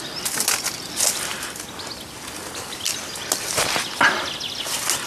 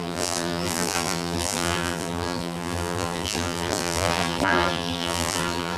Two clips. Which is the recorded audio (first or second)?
first